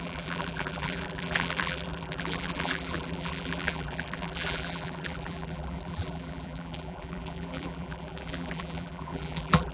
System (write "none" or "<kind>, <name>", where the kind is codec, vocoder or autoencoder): vocoder, BigVGAN v2